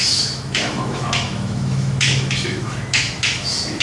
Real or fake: fake